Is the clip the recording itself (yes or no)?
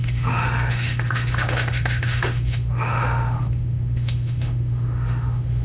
no